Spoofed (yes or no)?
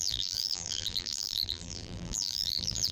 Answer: yes